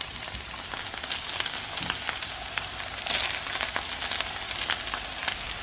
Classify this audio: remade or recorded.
recorded